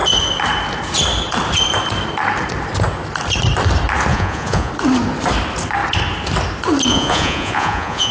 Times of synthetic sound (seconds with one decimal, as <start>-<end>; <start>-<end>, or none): 4.1-4.7; 6.9-8.1